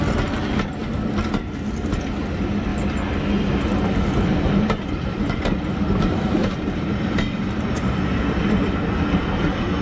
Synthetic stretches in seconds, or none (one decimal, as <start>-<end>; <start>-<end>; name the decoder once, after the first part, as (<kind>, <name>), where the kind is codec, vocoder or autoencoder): 6.4-7.0 (vocoder, BigVGAN v2)

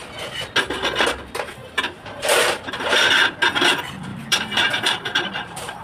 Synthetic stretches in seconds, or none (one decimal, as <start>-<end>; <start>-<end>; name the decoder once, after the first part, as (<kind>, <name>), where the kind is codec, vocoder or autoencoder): 1.6-3.1 (vocoder, BigVGAN v2); 4.1-5.8

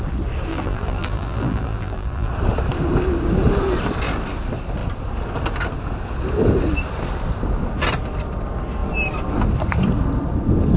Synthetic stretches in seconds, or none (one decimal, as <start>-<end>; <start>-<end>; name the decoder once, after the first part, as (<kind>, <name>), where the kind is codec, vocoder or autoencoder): 0.5-2.3 (vocoder, BigVGAN v2)

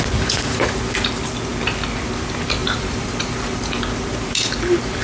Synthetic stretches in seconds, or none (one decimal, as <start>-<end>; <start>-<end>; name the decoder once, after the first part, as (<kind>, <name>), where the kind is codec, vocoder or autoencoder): 2.6-3.8 (vocoder, BigVGAN v2)

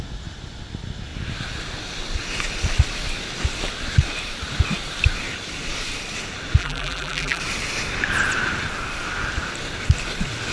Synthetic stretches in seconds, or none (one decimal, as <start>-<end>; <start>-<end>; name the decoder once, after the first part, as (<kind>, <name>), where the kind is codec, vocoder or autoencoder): 6.6-7.4 (vocoder, BigVGAN v2)